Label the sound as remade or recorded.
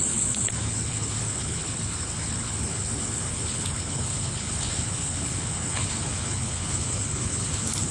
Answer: remade